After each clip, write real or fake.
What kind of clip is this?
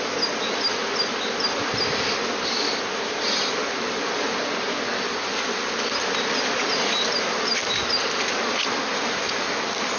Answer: real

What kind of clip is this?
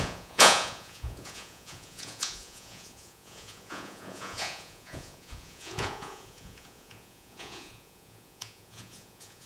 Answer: fake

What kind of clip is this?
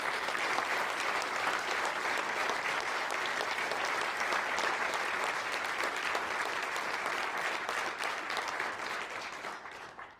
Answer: real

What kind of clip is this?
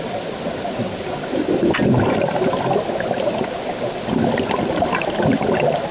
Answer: real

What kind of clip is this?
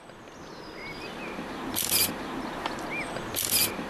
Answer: real